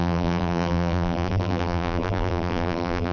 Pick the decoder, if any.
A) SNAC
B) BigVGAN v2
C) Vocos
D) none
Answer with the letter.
B